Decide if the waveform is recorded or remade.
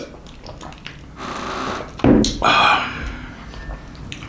recorded